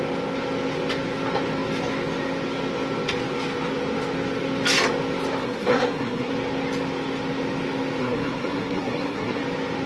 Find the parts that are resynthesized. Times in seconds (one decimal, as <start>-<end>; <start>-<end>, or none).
5.4-6.3; 8.0-9.4